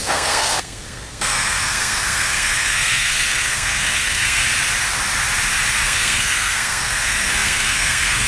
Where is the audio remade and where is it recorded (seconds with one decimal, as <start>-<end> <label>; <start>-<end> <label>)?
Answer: 0.0-4.4 remade; 4.4-5.8 recorded; 5.8-8.3 remade